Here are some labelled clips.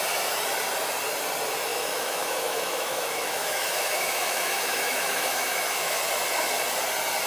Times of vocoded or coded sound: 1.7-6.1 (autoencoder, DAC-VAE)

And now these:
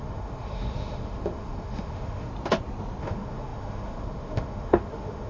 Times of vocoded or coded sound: 0.0-2.3 (autoencoder, DAC-VAE); 3.0-5.3

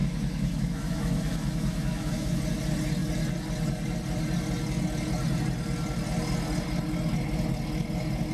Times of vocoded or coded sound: 0.0-2.4 (autoencoder, DAC-VAE)

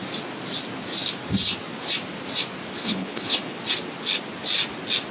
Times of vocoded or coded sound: 2.8-3.6 (codec, HILCodec)

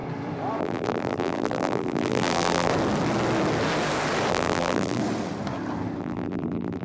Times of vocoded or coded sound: 0.6-2.7 (vocoder, BigVGAN v2); 4.3-5.0; 6.0-6.8